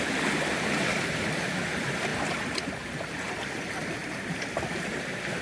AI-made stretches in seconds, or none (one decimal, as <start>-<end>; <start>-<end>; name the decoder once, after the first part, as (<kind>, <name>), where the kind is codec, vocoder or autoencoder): 0.0-5.4 (vocoder, BigVGAN v2)